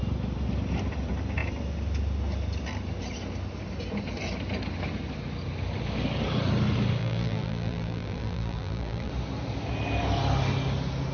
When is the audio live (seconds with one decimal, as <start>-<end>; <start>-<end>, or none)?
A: 0.0-7.0; 9.1-11.1